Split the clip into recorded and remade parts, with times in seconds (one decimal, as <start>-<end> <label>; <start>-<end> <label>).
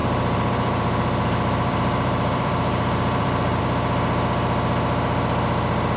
0.0-3.6 remade; 3.6-6.0 recorded